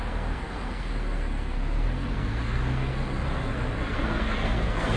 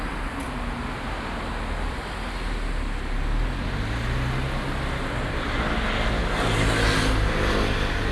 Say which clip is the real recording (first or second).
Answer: second